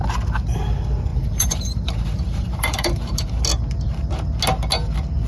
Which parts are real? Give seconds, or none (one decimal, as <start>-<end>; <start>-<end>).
0.0-1.1; 3.4-5.3